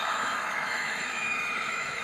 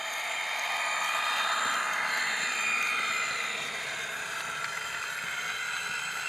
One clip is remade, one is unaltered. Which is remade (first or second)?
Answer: first